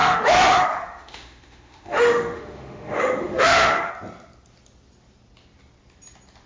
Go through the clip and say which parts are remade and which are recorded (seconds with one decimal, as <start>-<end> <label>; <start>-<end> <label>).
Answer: 0.0-3.9 remade; 3.9-6.5 recorded